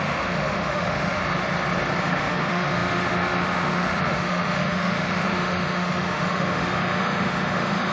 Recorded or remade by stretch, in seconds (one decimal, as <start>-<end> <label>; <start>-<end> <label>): 0.0-1.2 remade; 1.2-2.0 recorded; 2.0-7.9 remade